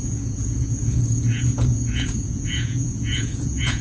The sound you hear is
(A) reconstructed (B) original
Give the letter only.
A